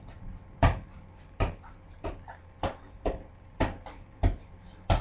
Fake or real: fake